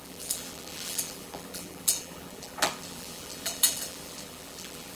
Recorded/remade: remade